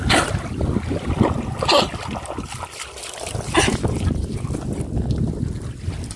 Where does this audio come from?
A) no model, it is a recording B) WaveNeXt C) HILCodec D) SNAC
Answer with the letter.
A